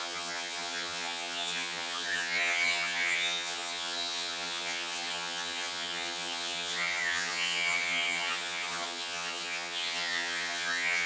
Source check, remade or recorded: remade